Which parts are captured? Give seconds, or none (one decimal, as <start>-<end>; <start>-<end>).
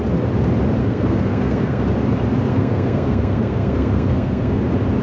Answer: 0.0-0.8; 1.8-2.5; 4.6-5.0